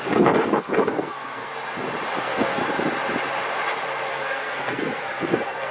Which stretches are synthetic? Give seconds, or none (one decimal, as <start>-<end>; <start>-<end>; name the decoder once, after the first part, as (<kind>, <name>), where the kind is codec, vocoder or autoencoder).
0.0-1.5 (codec, SNAC); 2.2-2.6; 4.1-5.7